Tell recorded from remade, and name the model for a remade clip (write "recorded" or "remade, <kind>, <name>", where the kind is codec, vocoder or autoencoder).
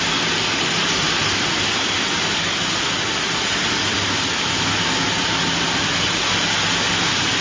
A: recorded